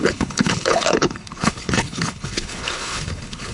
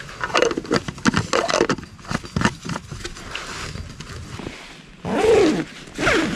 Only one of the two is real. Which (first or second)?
second